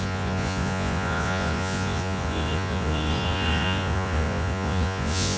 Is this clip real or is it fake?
fake